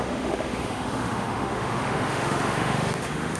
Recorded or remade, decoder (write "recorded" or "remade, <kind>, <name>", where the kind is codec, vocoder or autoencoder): remade, autoencoder, DAC-VAE